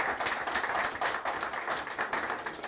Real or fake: real